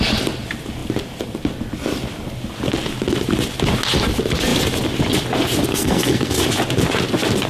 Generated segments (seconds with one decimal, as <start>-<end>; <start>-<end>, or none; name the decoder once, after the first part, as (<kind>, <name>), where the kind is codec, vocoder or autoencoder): 5.7-6.4 (codec, SNAC)

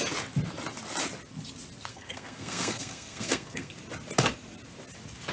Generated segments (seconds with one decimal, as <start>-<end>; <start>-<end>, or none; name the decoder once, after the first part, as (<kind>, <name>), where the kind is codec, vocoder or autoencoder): 1.9-3.7 (codec, SNAC)

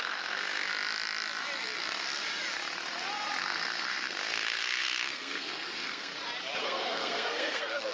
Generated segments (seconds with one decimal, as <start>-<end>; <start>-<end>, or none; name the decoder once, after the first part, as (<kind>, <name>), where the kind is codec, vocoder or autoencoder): 0.0-0.7 (codec, SNAC); 3.4-6.1; 6.6-7.9

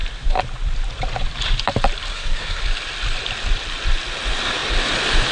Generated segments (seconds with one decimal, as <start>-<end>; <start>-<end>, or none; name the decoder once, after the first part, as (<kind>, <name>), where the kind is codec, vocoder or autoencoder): 2.1-2.6 (codec, SNAC)

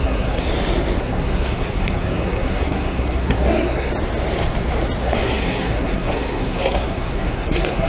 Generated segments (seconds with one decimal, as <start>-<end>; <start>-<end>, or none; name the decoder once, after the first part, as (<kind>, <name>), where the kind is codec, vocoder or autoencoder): 0.0-0.5 (codec, SNAC); 1.0-3.9; 5.0-7.9